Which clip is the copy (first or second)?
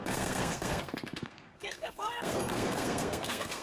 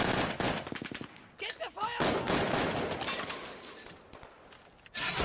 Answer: first